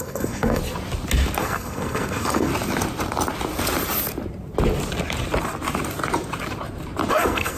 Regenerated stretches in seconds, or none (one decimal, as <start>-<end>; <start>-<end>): 0.0-0.6; 1.4-2.5; 7.1-7.6